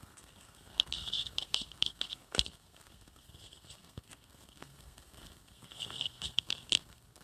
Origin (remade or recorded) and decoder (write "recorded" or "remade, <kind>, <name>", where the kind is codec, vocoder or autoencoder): remade, codec, SNAC